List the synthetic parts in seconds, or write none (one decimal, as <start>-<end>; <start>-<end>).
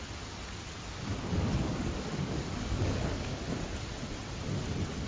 1.1-3.4